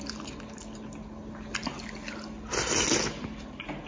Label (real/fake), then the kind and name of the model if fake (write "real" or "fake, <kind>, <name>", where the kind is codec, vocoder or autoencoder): real